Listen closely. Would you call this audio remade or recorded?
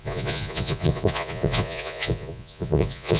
remade